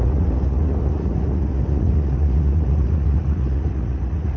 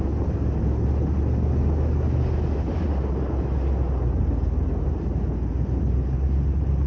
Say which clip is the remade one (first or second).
first